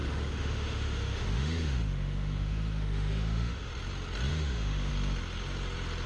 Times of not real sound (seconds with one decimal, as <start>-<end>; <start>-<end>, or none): 0.0-3.7; 4.3-4.9